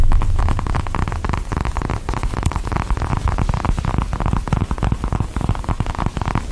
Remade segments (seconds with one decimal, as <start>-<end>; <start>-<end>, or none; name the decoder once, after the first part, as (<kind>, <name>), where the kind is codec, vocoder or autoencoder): none